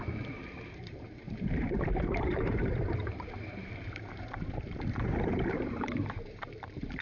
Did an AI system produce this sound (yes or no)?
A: yes